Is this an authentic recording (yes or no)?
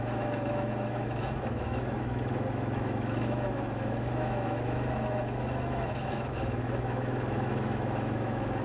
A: no